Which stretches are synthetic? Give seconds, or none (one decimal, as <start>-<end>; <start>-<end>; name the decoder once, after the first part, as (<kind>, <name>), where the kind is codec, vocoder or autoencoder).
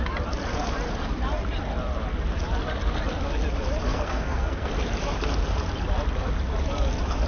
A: 3.9-4.7 (codec, SNAC)